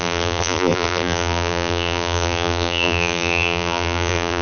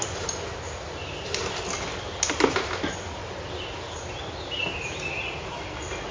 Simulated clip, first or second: first